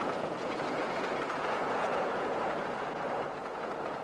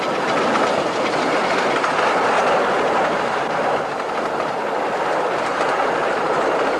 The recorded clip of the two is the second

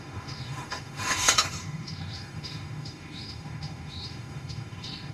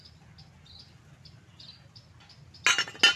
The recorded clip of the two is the second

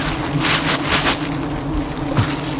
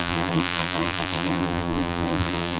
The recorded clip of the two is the first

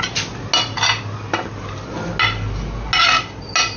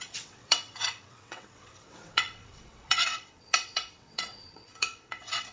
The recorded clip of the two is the first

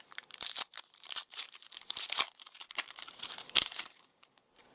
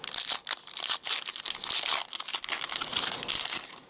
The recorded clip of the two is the second